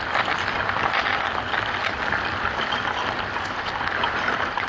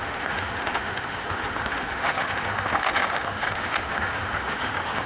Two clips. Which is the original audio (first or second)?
first